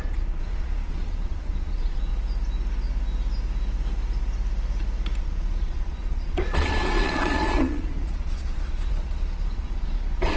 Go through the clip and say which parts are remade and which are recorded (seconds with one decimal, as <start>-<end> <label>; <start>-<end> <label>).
0.0-2.1 remade; 2.1-5.2 recorded; 5.2-10.4 remade